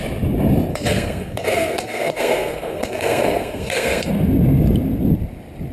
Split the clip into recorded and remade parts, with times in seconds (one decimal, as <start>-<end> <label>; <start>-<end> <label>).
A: 0.0-0.7 recorded; 0.7-4.1 remade; 4.1-5.7 recorded